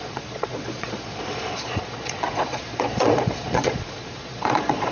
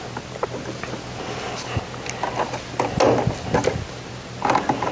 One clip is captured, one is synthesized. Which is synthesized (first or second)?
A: first